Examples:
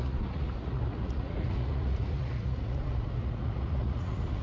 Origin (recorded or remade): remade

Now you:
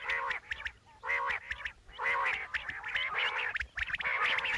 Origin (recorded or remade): recorded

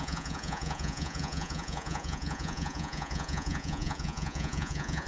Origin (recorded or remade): remade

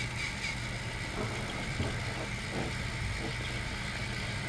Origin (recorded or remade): recorded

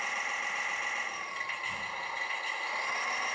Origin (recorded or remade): recorded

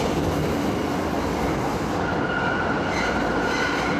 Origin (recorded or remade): recorded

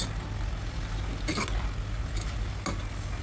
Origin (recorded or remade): recorded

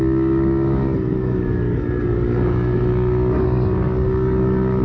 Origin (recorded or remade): remade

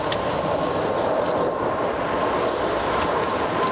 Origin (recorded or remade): recorded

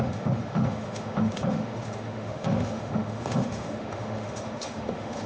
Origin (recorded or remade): remade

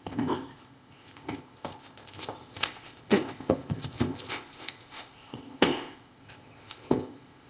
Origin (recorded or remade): remade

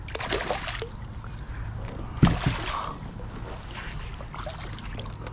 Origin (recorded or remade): recorded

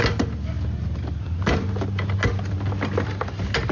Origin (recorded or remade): recorded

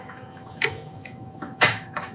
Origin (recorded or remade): remade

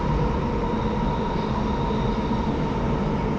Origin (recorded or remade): recorded